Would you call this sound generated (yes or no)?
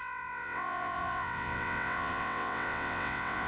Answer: yes